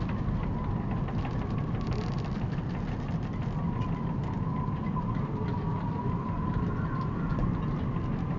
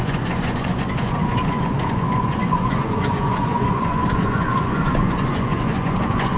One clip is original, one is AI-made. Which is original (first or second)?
first